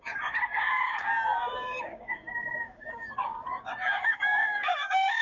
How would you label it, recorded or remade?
remade